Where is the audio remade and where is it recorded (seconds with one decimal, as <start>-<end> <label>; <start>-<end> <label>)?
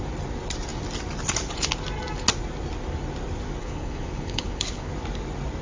0.0-3.6 recorded; 3.6-4.9 remade; 4.9-5.6 recorded